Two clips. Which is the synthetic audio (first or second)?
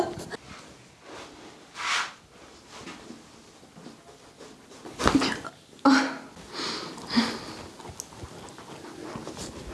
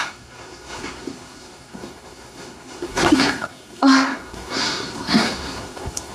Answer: second